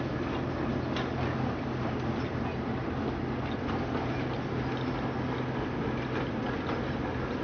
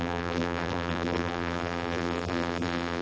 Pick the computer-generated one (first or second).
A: second